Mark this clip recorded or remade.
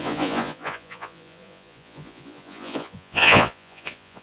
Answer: remade